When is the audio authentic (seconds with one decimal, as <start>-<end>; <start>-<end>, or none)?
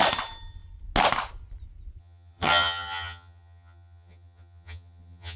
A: 0.0-2.0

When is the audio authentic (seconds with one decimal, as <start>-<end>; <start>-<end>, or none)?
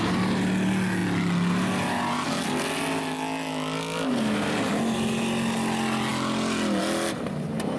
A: 0.0-7.8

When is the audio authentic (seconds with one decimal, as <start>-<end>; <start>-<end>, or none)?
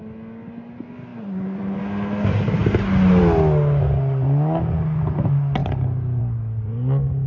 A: 0.0-1.1; 1.8-7.3